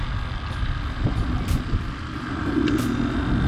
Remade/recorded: recorded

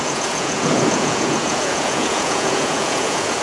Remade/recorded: remade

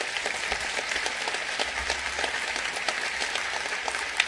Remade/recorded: recorded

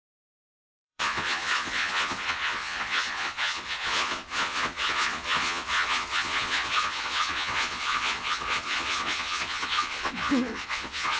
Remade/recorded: remade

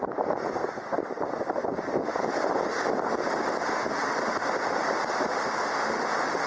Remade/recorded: recorded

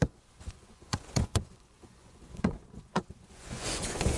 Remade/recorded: remade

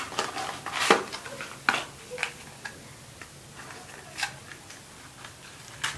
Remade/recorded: recorded